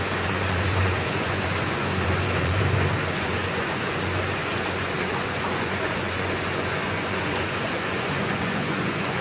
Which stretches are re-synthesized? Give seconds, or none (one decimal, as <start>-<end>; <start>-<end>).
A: 0.0-9.2

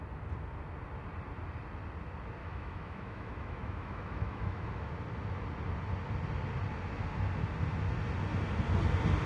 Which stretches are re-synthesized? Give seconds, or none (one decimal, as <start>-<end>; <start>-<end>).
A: 2.4-4.9